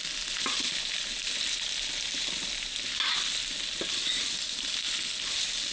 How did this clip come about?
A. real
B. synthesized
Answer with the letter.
A